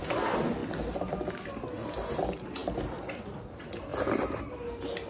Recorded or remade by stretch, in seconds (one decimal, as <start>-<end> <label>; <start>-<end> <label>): 0.0-5.1 recorded